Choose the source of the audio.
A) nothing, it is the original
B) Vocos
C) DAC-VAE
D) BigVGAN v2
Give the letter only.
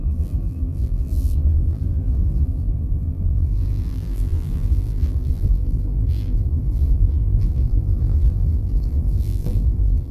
D